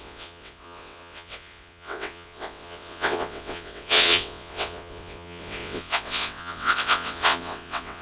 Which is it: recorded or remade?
remade